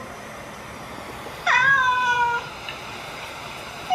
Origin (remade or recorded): remade